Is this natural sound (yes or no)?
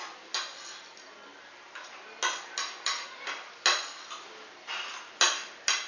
yes